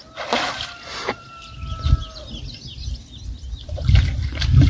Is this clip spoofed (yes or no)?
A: no